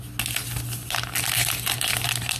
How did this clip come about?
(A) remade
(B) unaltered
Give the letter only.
B